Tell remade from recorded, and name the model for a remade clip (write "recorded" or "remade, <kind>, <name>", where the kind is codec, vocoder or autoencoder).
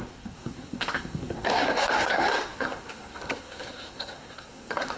remade, codec, SNAC